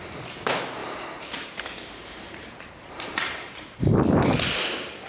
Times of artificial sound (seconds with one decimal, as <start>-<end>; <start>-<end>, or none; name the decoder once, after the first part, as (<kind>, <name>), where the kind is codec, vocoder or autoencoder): 0.8-3.9 (vocoder, BigVGAN v2)